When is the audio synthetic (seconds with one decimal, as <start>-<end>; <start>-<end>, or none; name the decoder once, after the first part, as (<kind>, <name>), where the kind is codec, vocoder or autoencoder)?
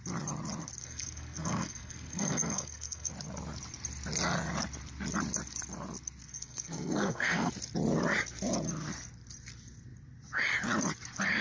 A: 0.8-3.1 (codec, SNAC); 6.2-7.5